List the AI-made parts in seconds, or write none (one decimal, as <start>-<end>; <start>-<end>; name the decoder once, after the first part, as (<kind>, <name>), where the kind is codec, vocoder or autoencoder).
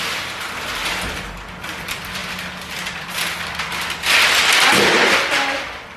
none